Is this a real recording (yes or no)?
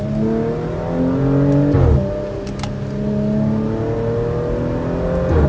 yes